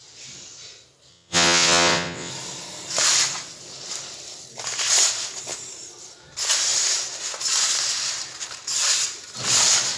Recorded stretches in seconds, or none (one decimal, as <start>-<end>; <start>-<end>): 0.0-1.1; 2.3-10.0

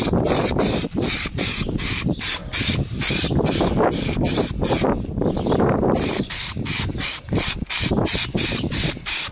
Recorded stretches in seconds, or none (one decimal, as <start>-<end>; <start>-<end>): 2.4-5.6

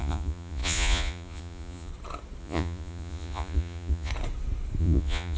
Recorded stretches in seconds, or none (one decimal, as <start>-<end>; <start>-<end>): 1.9-2.4; 4.1-4.8

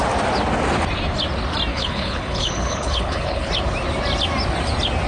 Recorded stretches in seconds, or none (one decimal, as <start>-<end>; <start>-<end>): 0.0-1.7; 3.5-5.1